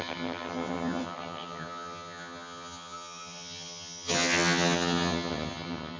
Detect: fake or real fake